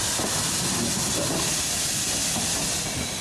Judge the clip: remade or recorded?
recorded